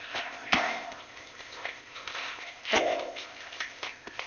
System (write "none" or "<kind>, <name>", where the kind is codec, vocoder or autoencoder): codec, ZipCodec